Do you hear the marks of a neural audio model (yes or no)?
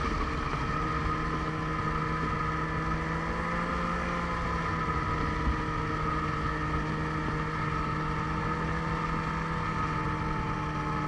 no